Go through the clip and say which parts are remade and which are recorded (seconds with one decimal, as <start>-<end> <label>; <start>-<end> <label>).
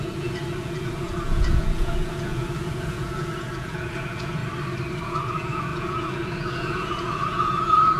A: 0.0-4.4 remade; 4.4-5.0 recorded; 5.0-8.0 remade